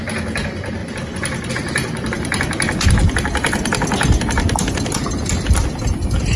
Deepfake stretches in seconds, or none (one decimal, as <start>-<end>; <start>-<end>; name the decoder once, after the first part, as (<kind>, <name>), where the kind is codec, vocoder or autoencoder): none